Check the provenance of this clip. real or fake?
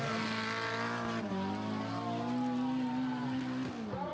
real